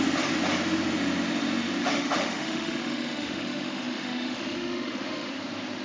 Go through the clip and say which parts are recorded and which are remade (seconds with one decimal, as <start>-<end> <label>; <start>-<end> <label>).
0.0-1.8 recorded; 1.8-5.3 remade; 5.3-5.8 recorded